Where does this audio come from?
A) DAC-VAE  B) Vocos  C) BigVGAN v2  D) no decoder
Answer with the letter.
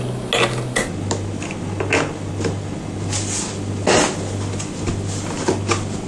D